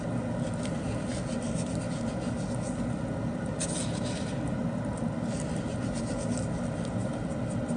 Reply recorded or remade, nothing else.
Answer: recorded